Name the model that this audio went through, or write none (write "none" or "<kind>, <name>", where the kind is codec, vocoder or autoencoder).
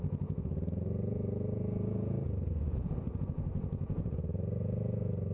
vocoder, Vocos